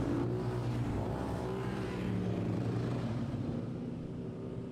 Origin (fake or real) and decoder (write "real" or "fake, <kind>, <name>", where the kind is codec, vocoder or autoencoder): fake, vocoder, BigVGAN v2